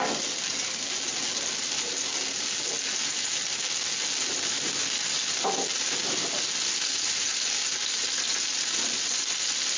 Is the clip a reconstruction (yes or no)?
no